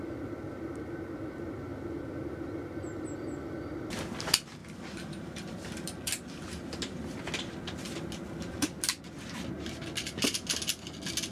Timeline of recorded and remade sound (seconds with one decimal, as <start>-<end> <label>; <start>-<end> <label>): 0.0-4.6 recorded; 4.6-9.0 remade; 9.0-11.3 recorded